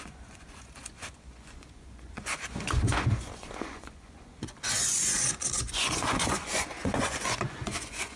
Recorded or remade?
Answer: remade